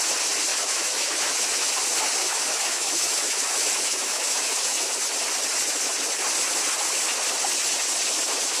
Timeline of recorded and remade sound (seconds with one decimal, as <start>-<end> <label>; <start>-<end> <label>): 0.0-0.5 recorded; 0.5-1.7 remade; 1.7-2.2 recorded; 2.2-4.9 remade; 4.9-8.6 recorded